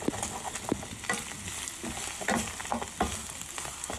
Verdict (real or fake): real